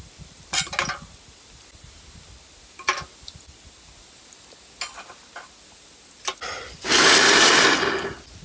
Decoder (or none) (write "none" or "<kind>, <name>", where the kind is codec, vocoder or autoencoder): none